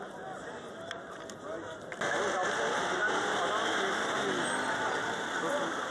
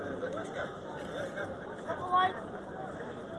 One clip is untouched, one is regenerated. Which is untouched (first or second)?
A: first